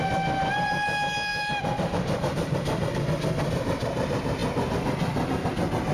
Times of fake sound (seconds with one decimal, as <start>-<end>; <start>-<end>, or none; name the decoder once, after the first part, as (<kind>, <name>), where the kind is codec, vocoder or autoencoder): 1.3-3.0 (vocoder, BigVGAN v2)